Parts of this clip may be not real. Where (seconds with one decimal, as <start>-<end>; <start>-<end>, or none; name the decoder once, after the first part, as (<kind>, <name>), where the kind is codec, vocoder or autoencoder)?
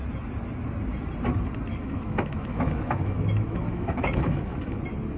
1.7-4.8 (autoencoder, DAC-VAE)